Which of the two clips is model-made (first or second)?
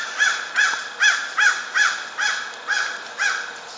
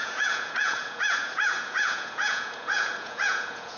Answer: second